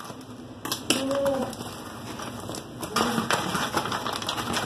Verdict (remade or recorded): recorded